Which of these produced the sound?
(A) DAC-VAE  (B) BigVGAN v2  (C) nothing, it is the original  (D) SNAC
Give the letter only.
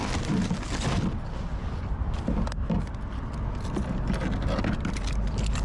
C